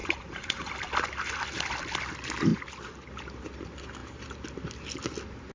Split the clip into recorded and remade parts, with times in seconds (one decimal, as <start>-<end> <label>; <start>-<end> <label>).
0.0-0.7 remade; 0.7-5.5 recorded